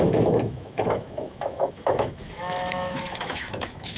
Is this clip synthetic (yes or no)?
yes